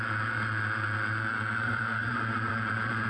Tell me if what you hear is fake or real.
fake